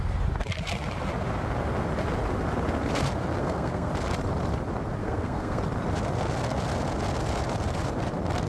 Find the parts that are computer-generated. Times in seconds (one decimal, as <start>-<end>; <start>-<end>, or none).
3.4-3.9; 5.0-5.6

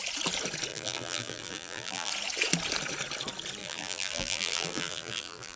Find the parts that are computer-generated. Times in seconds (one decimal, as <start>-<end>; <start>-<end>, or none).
0.7-2.1; 3.6-5.6